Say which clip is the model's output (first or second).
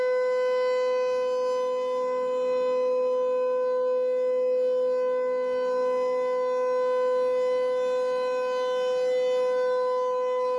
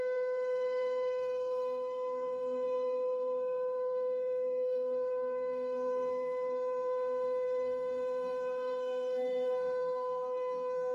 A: second